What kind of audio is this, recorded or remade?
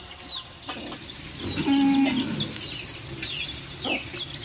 recorded